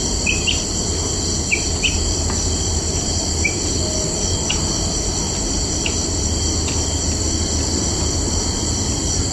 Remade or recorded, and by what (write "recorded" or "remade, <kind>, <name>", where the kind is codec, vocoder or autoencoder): remade, vocoder, BigVGAN v2